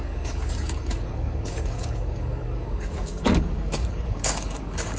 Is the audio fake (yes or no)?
yes